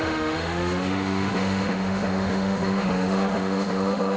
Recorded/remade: remade